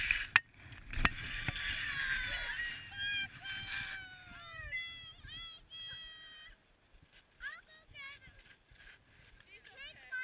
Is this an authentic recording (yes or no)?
yes